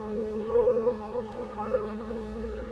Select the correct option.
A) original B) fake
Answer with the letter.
B